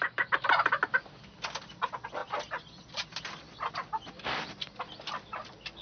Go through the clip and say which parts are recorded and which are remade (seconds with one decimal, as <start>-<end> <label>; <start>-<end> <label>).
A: 0.0-5.8 recorded